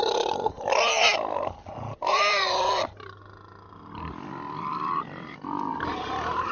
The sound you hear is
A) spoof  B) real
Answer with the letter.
B